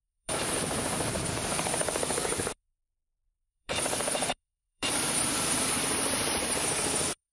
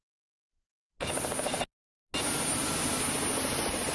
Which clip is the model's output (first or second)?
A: first